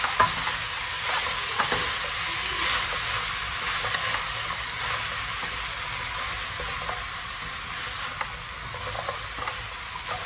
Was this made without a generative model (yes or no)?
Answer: yes